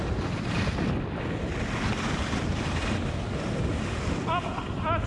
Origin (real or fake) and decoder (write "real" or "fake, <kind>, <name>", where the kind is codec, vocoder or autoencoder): real